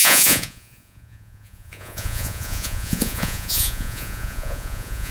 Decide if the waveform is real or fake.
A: fake